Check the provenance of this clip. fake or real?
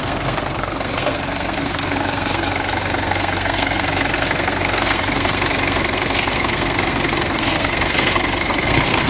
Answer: fake